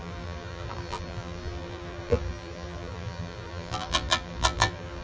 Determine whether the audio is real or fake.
fake